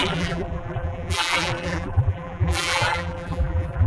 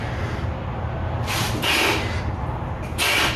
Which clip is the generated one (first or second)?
first